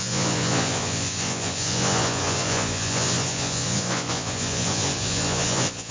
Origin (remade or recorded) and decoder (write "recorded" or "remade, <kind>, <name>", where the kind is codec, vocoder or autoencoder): remade, vocoder, Vocos